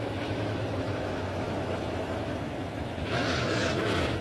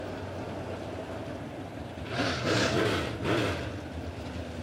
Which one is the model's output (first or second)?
first